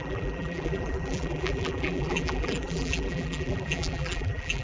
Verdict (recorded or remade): remade